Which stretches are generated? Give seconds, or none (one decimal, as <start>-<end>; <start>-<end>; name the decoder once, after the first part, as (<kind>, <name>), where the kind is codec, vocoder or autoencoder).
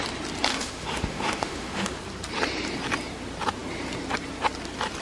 0.5-2.0 (autoencoder, DAC-VAE)